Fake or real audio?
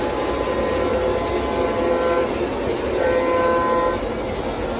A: real